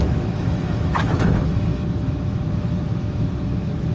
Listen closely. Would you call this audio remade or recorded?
remade